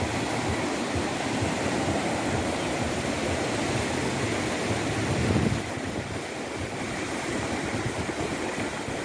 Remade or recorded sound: recorded